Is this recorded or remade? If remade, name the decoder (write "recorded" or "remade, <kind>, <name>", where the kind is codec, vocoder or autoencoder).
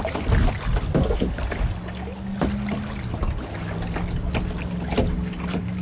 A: recorded